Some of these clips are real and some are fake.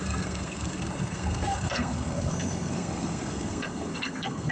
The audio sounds fake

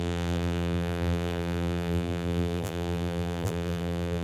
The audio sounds fake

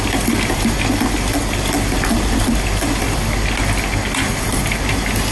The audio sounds real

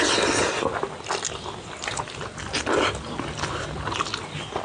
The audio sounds real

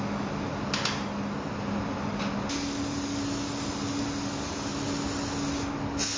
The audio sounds real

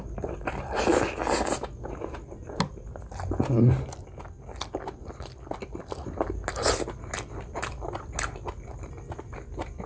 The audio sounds real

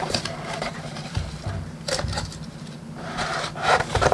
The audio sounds fake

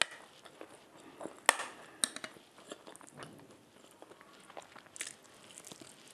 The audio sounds real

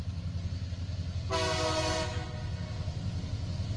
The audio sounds real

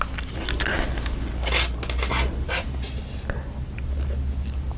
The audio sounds real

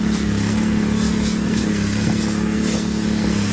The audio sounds fake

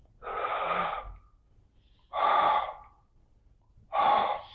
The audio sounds real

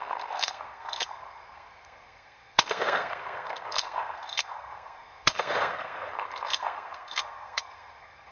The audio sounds fake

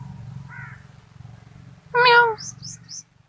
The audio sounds real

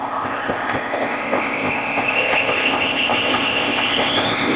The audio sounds fake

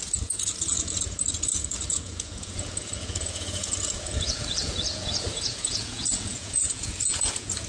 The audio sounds fake